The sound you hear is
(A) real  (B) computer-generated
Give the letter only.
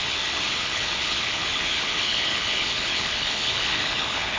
B